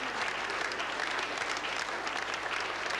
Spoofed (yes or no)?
no